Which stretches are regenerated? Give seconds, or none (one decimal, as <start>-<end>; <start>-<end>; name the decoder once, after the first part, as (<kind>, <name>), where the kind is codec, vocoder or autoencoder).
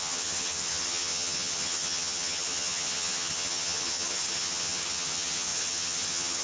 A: 0.0-6.4 (vocoder, HiFi-GAN)